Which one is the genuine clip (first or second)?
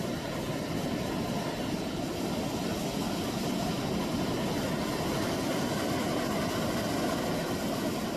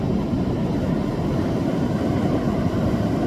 first